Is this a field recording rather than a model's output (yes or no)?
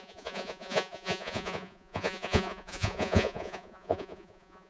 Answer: no